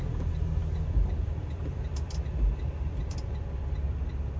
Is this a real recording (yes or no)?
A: yes